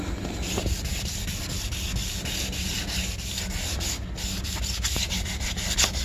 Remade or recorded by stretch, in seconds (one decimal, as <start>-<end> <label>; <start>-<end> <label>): 0.0-6.0 recorded